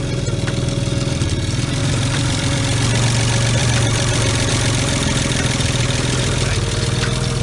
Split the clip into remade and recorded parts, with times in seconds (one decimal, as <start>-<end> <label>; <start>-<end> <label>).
0.0-1.8 recorded; 1.8-2.6 remade; 2.6-3.6 recorded; 3.6-4.5 remade; 4.5-7.4 recorded